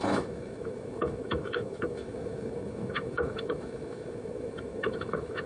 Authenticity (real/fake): fake